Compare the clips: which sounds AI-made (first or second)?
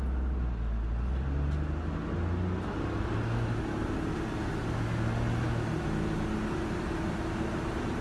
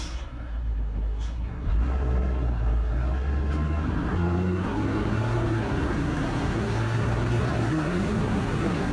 second